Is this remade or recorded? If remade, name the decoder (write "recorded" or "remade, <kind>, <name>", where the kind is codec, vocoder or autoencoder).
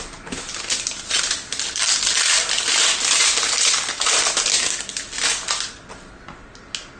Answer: recorded